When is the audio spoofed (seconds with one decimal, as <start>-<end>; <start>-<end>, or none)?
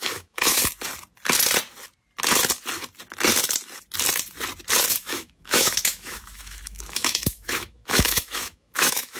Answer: 0.0-0.6; 4.9-9.2